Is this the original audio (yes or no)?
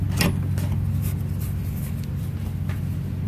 yes